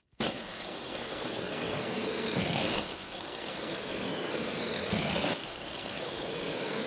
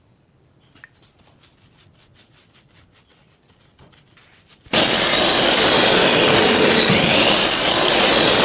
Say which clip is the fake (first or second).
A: first